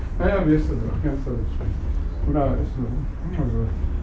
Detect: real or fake real